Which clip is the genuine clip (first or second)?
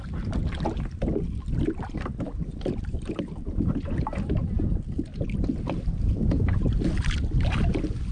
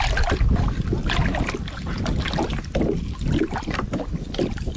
second